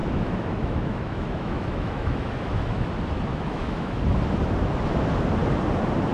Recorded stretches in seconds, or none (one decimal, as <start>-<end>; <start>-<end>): 2.9-3.3; 4.0-6.1